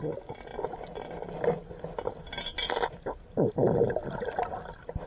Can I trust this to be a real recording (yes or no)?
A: yes